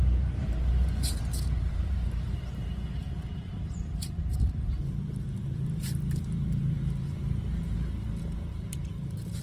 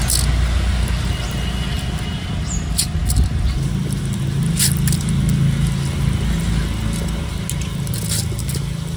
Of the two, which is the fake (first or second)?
first